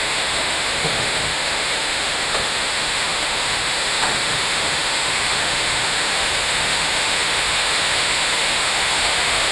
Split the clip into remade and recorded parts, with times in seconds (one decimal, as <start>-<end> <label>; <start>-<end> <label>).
0.0-9.5 remade